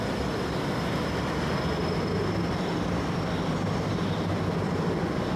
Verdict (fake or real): real